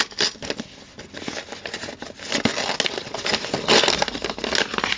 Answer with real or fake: real